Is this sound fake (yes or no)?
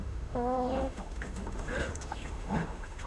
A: yes